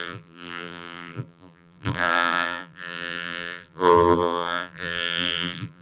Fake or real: fake